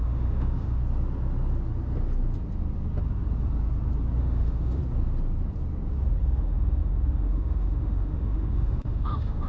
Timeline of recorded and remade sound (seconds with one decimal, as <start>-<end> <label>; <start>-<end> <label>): 0.0-0.8 remade; 0.8-4.2 recorded; 4.2-4.8 remade; 4.8-6.2 recorded; 6.2-9.5 remade